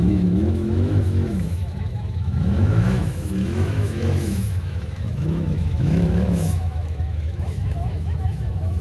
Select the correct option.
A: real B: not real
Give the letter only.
B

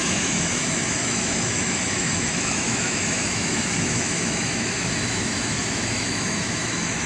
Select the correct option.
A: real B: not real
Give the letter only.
B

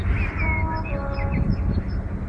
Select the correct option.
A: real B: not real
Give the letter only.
A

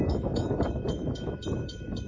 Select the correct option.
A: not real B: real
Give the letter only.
A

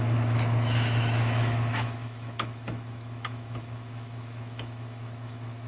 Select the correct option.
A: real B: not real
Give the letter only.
B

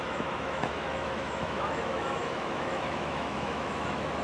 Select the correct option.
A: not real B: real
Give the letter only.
A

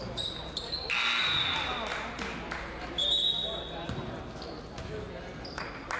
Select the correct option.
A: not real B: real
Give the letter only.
B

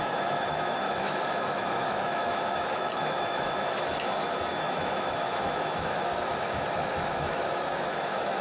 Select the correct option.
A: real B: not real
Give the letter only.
B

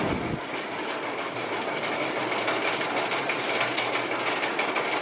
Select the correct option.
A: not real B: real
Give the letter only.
B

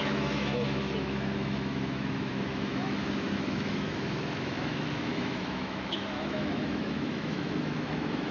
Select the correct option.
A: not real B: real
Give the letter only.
A